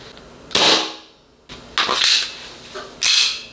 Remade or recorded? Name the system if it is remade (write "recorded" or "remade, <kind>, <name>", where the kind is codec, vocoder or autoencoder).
recorded